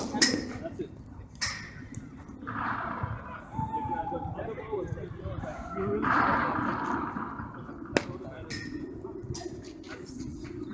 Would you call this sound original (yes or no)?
yes